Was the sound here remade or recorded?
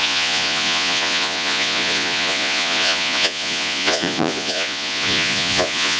remade